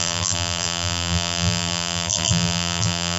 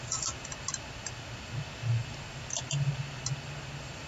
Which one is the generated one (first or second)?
first